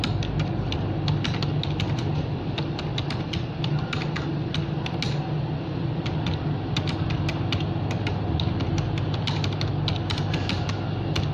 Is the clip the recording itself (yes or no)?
yes